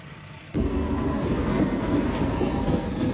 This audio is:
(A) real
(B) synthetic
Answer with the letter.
B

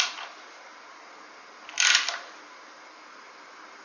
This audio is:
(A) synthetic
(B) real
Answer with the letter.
B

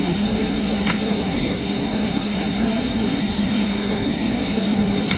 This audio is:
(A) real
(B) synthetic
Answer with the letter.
B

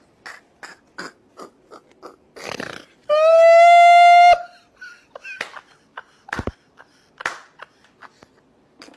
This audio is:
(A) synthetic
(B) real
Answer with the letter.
B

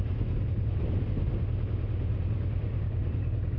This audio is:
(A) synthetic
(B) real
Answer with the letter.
B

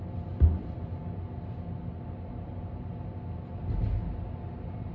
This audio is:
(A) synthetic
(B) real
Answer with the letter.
B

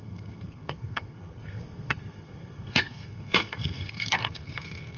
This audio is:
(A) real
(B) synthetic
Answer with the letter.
B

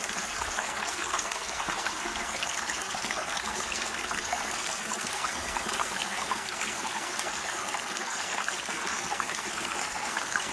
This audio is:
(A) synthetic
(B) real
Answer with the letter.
A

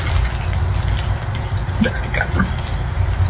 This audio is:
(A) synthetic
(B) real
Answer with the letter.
B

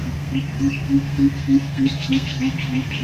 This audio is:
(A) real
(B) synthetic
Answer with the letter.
B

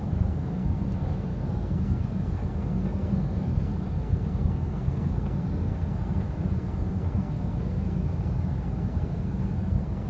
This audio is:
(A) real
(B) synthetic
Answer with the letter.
B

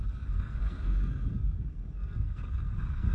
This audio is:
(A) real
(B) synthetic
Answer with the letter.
B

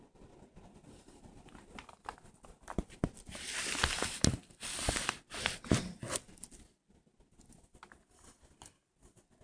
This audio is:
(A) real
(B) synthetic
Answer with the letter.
A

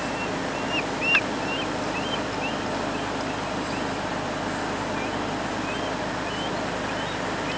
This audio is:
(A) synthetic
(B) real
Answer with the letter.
B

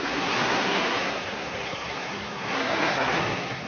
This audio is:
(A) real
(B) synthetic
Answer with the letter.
B